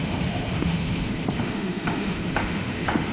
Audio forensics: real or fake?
fake